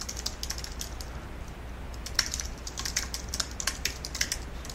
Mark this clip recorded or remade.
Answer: recorded